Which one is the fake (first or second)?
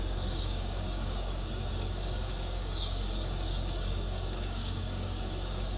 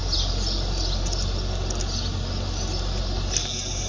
first